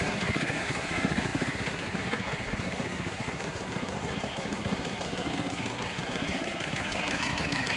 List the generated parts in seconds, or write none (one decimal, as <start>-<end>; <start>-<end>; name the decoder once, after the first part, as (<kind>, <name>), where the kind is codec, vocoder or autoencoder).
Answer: 0.0-7.8 (codec, SNAC)